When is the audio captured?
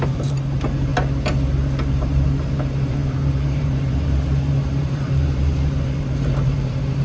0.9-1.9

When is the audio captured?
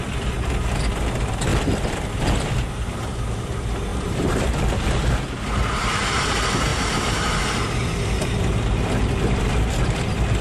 0.0-3.9; 4.5-6.7; 7.3-10.4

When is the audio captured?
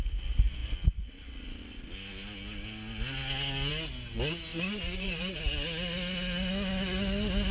0.0-4.5; 5.4-7.5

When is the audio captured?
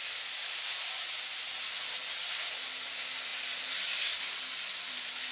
1.0-5.3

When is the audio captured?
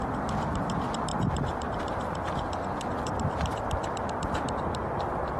0.0-1.1; 2.2-5.4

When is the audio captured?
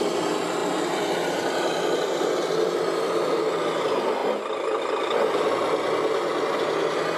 0.0-0.6; 3.4-4.2; 5.5-7.2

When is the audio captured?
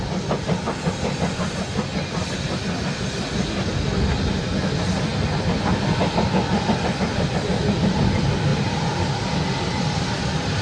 1.9-2.7; 5.1-7.8; 8.5-9.6